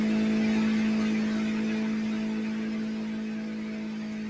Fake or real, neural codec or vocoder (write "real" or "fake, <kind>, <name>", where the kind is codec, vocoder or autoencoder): real